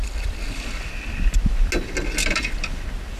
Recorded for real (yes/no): yes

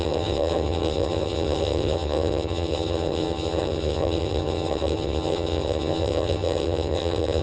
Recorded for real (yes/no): no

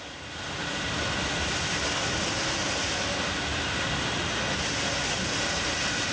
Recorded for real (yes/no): yes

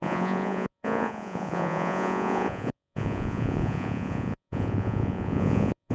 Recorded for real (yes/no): no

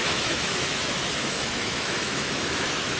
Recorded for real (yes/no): no